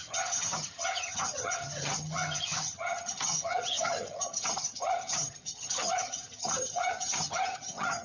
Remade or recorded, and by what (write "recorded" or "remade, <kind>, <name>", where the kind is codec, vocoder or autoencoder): remade, vocoder, HiFi-GAN